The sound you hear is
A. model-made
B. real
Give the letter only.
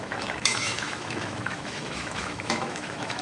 A